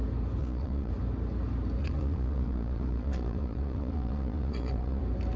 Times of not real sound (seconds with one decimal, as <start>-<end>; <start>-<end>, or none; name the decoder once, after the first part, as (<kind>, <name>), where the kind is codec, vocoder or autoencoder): 0.4-0.9 (vocoder, Vocos); 1.8-5.0